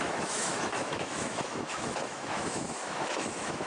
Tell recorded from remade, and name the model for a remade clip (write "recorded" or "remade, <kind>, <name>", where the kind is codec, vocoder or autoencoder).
remade, autoencoder, DAC-VAE